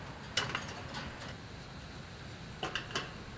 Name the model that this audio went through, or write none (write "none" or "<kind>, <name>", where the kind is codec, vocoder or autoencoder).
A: none